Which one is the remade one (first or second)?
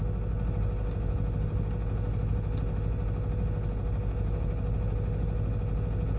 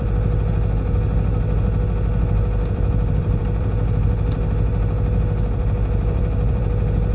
second